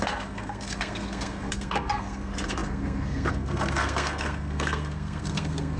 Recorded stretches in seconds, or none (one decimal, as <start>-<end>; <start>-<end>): none